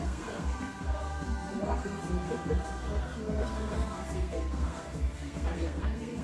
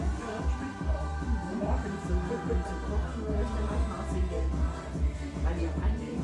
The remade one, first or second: first